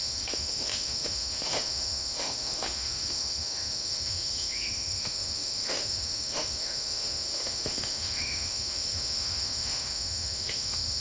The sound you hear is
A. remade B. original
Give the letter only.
A